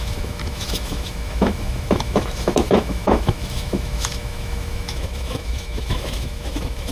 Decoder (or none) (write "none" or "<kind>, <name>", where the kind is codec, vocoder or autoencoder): autoencoder, DAC-VAE